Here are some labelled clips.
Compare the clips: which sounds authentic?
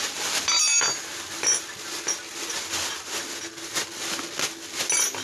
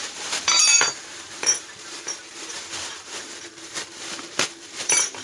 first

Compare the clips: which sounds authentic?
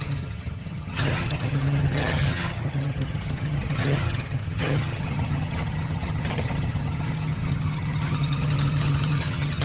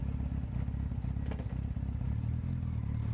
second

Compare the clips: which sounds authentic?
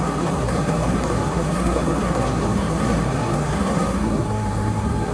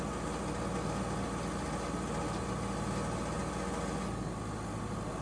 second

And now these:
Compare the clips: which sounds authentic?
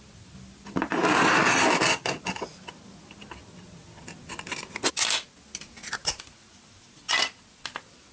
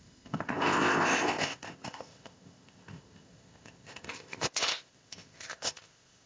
first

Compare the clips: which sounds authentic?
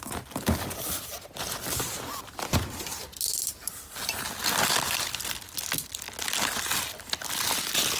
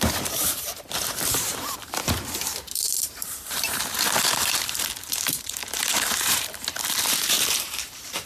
first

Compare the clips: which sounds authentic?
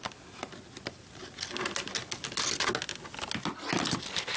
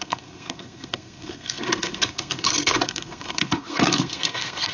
first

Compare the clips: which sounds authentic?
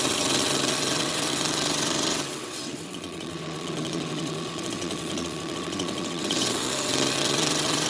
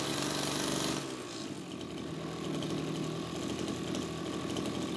second